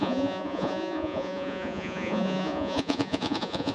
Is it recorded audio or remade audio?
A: remade